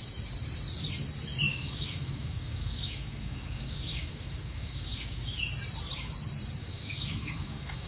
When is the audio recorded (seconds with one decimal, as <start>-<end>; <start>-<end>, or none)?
0.0-1.5; 5.4-6.6

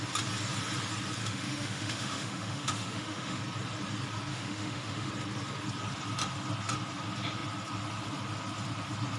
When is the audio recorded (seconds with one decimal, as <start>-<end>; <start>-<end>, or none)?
0.0-1.2; 3.4-4.3; 5.1-9.2

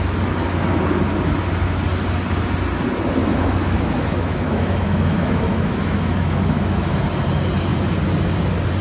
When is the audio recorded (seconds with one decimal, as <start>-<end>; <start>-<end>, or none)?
0.0-3.2; 7.0-8.8

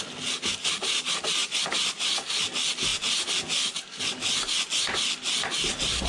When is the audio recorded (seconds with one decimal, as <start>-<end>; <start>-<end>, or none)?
0.0-6.1

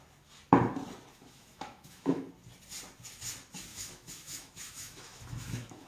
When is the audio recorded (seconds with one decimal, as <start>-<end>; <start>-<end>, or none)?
0.0-1.1; 2.3-3.7

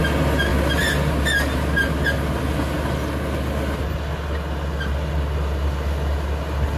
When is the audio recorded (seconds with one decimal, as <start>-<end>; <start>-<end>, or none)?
0.0-6.8

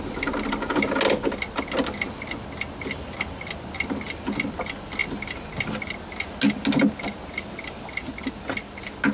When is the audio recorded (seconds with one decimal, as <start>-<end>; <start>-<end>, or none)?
0.0-9.1